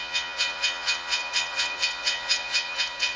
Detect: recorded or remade remade